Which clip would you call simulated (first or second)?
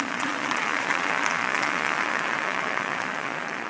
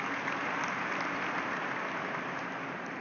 first